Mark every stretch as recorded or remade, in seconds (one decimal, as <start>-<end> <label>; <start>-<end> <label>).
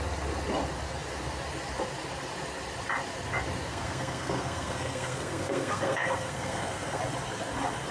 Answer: 0.0-3.7 recorded; 3.7-7.0 remade; 7.0-7.9 recorded